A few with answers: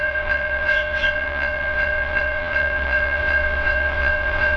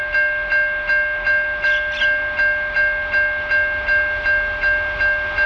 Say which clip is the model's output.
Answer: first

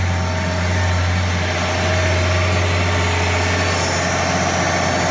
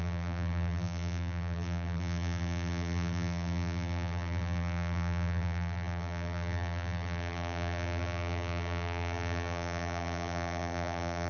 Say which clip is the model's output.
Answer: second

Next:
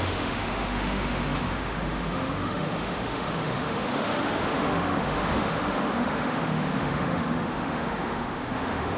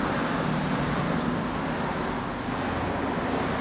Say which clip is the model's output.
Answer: first